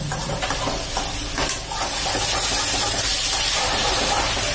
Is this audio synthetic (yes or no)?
no